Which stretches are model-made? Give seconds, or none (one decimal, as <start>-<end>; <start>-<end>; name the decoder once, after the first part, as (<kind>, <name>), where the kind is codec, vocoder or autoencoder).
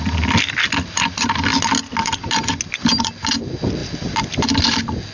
none